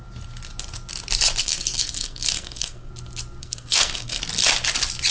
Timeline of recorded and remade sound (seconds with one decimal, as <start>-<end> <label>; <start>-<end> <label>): 0.0-1.4 recorded; 1.4-2.9 remade; 2.9-3.4 recorded; 3.4-4.2 remade; 4.2-5.1 recorded